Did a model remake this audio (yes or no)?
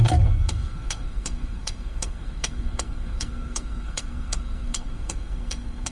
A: yes